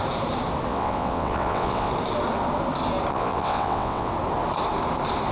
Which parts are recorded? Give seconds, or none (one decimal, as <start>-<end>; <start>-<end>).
0.0-0.7; 1.9-3.1; 4.1-5.3